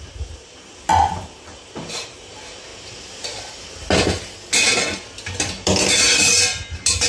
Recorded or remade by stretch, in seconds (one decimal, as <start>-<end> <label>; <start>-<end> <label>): 0.0-7.1 recorded